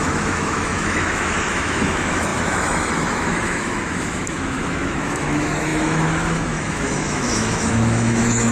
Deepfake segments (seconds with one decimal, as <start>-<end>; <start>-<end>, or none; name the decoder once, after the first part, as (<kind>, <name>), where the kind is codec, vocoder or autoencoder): 0.0-8.5 (autoencoder, DAC-VAE)